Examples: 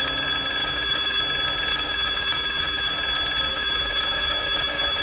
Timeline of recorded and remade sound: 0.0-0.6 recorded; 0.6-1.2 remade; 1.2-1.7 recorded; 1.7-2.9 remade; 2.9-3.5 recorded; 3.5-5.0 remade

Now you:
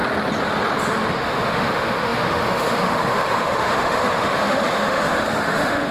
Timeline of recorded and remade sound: 0.0-1.1 recorded; 1.1-5.9 remade

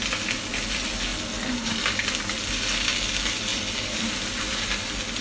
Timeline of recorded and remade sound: 0.0-5.2 recorded

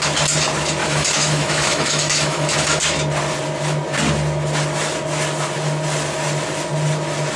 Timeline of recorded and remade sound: 0.0-0.8 recorded; 0.8-2.8 remade; 2.8-7.4 recorded